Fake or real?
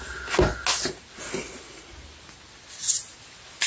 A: real